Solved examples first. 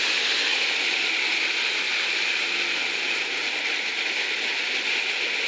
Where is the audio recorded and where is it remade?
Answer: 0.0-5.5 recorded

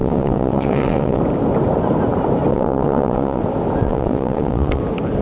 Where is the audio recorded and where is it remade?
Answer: 0.0-1.2 remade; 1.2-2.5 recorded; 2.5-3.4 remade; 3.4-3.8 recorded; 3.8-4.8 remade; 4.8-5.2 recorded

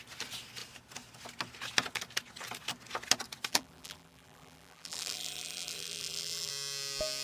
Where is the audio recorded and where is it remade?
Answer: 0.0-3.5 recorded; 3.5-6.5 remade; 6.5-7.2 recorded

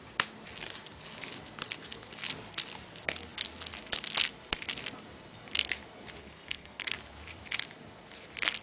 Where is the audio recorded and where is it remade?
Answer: 0.0-6.2 recorded; 6.2-6.9 remade; 6.9-8.6 recorded